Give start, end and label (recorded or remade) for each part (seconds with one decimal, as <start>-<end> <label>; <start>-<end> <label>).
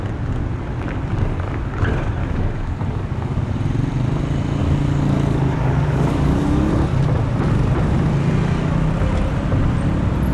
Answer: 0.0-1.1 recorded; 1.1-1.8 remade; 1.8-2.2 recorded; 2.2-3.5 remade; 3.5-4.6 recorded; 4.6-6.7 remade; 6.7-10.3 recorded